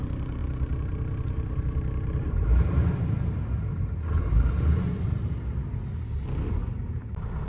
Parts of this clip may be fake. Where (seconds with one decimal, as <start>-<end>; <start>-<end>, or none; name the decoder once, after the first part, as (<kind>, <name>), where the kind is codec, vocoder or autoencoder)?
0.4-2.5 (vocoder, BigVGAN v2); 3.7-5.4